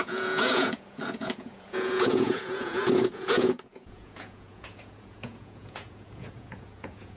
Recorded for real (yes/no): no